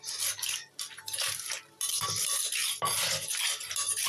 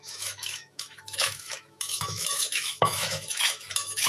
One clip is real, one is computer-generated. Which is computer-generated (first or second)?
second